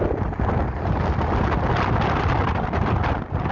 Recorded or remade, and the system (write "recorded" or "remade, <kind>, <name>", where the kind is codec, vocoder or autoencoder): recorded